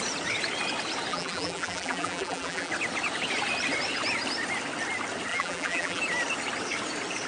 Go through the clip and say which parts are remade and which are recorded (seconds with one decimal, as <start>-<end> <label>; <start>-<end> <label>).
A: 0.0-1.1 recorded; 1.1-2.7 remade; 2.7-5.3 recorded; 5.3-6.0 remade; 6.0-7.3 recorded